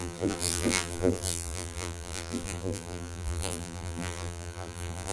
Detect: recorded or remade remade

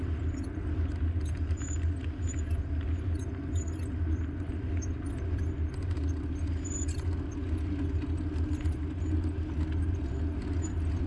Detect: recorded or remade recorded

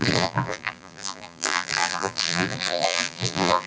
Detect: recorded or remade remade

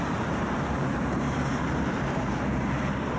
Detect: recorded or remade remade